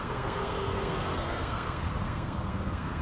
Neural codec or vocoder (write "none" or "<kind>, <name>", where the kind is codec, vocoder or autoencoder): codec, SNAC